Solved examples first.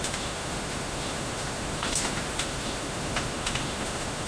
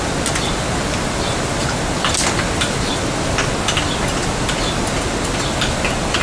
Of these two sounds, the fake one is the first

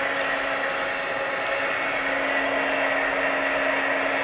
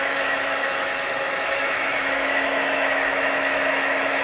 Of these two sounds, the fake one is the second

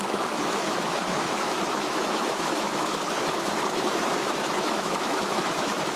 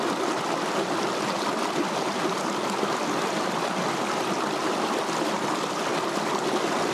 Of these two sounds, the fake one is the first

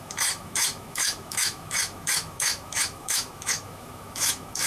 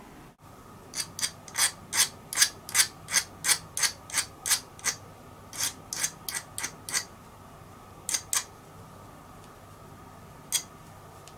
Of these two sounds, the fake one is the first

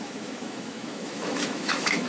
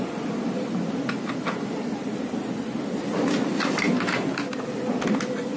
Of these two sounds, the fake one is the first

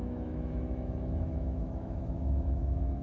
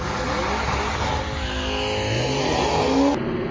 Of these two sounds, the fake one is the first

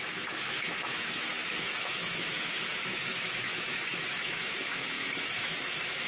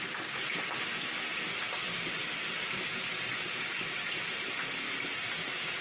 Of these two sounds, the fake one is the first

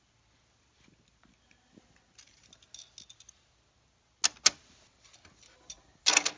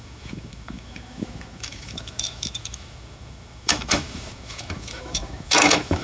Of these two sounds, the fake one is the second